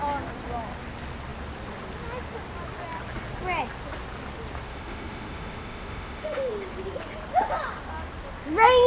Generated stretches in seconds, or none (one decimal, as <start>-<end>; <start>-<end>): 4.7-6.5